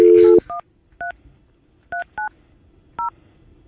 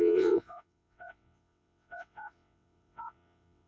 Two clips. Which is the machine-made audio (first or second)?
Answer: second